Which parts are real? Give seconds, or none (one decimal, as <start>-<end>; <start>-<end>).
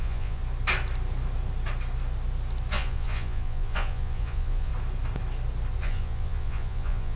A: 0.4-2.7; 4.7-5.8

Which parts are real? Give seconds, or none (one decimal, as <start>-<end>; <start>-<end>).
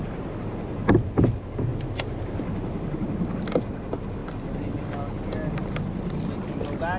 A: 0.0-7.0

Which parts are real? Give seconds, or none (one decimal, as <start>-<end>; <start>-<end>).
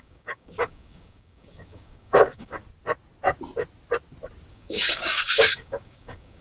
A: 2.6-4.5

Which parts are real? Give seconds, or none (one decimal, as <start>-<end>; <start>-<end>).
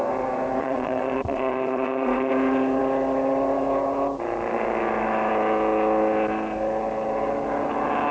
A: 0.0-0.6; 2.3-8.1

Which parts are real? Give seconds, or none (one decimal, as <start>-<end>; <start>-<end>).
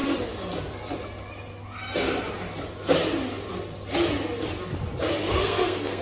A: 0.0-5.2